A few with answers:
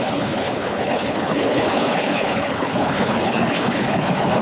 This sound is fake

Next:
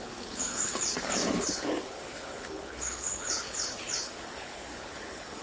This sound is fake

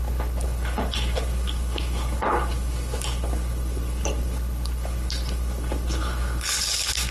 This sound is fake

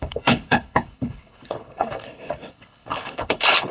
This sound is fake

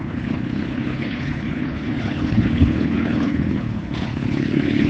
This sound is fake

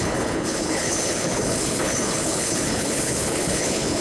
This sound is fake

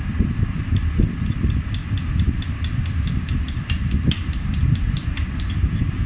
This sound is real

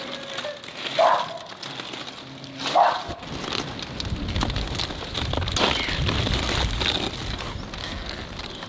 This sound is real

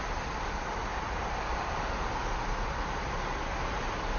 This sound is real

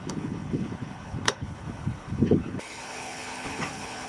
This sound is fake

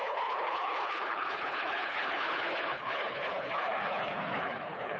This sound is fake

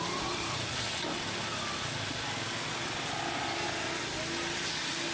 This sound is real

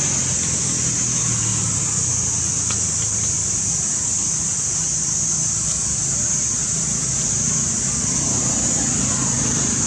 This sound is real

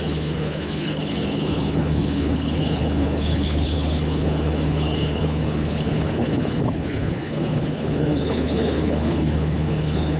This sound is fake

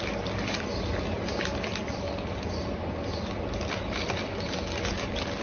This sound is real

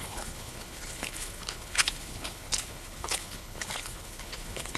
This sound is fake